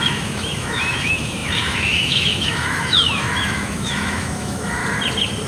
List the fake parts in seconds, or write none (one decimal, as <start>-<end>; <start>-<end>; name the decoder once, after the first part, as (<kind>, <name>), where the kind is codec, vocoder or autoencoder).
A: 0.0-4.8 (autoencoder, DAC-VAE)